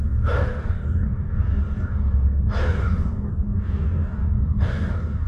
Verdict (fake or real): fake